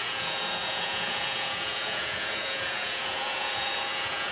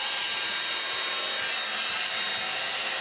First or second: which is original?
second